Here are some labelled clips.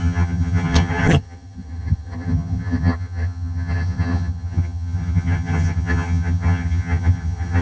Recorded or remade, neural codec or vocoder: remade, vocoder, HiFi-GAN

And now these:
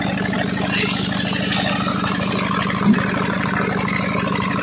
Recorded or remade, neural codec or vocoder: recorded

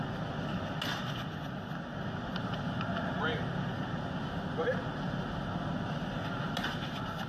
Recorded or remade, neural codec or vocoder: recorded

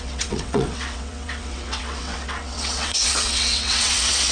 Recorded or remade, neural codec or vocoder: remade, vocoder, WaveNeXt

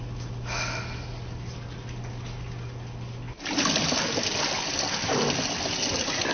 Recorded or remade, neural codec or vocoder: recorded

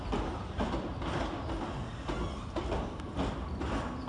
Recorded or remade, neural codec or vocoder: recorded